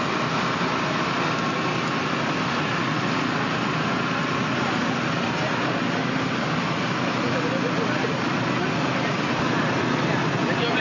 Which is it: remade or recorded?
recorded